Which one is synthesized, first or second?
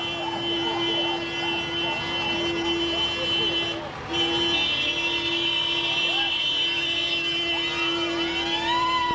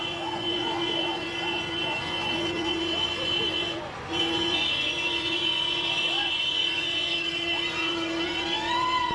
second